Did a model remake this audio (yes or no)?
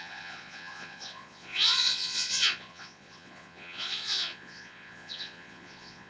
yes